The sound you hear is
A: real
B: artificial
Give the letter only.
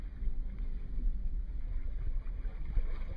A